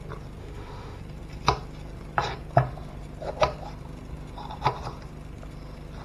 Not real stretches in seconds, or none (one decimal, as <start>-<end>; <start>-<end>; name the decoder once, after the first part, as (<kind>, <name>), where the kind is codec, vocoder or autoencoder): 0.4-1.0 (autoencoder, DAC-VAE)